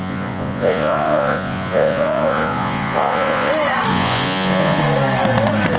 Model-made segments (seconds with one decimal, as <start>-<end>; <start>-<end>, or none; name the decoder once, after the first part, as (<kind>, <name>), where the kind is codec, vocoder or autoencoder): 0.0-3.5 (vocoder, Vocos); 3.9-4.8